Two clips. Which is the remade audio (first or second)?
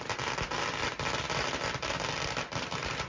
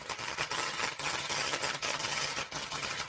second